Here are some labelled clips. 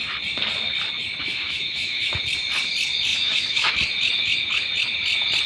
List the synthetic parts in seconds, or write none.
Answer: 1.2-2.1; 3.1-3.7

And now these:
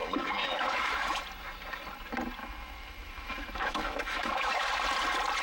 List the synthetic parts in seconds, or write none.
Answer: 0.0-1.2; 2.4-4.7

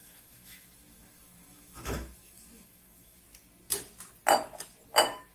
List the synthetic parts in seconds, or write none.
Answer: 0.0-3.2

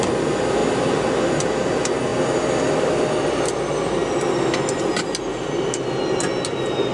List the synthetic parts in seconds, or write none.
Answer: none

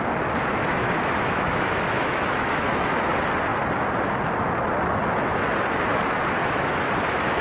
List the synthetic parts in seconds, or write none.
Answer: 0.7-3.1; 6.4-6.9